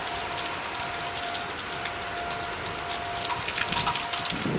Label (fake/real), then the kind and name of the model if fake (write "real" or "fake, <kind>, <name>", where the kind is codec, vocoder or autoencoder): real